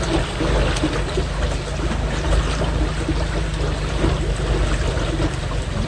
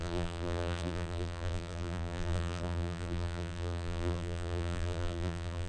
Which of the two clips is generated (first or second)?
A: second